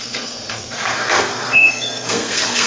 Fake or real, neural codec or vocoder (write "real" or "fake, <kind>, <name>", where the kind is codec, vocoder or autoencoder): fake, codec, SNAC